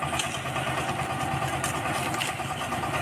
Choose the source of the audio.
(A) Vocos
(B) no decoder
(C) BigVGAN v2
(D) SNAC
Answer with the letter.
B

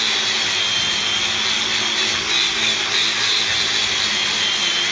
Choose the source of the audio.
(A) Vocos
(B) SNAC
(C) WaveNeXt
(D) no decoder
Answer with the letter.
D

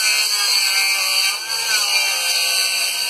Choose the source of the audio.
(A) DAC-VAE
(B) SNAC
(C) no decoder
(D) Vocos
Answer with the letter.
C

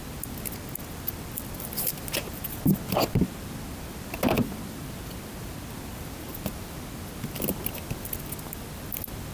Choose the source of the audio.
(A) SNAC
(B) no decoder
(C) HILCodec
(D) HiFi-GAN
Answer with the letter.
B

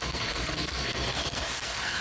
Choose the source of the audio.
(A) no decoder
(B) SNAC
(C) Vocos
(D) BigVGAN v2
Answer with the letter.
B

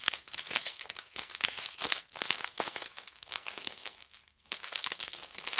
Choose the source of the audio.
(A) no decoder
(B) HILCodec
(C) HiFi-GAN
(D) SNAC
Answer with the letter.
D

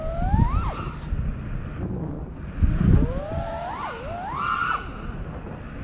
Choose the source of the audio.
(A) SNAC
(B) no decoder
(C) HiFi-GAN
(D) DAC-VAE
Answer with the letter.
B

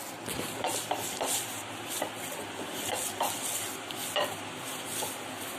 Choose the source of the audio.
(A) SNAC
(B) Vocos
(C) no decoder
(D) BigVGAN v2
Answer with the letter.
C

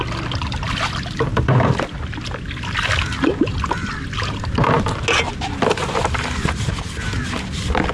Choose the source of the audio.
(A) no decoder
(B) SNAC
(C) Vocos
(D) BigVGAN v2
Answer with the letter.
A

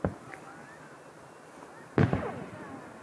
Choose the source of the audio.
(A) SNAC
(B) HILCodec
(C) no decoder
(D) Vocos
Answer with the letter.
C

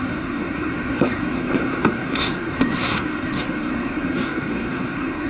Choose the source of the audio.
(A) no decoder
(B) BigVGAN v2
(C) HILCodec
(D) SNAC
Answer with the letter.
D